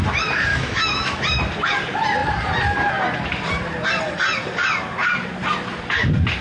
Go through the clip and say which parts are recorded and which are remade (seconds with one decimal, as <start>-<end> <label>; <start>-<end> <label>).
0.0-0.5 recorded; 0.5-1.2 remade; 1.2-6.4 recorded